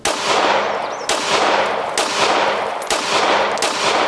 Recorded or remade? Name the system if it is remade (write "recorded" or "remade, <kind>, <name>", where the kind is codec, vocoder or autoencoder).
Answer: recorded